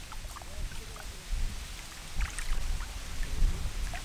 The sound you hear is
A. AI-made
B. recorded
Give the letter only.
B